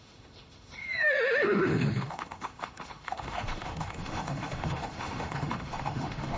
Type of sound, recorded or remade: remade